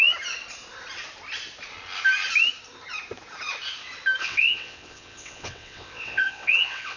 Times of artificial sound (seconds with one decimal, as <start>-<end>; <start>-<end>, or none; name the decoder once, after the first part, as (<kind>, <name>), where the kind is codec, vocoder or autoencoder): 4.2-7.0 (vocoder, WaveNeXt)